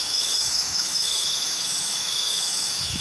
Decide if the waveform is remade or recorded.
remade